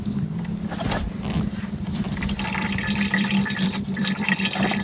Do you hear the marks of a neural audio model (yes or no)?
yes